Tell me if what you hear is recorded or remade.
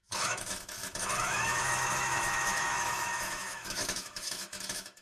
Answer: remade